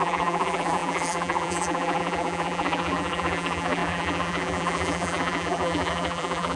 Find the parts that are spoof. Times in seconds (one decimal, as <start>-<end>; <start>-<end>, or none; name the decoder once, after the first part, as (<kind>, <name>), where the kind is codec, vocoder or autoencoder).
0.0-6.6 (vocoder, BigVGAN v2)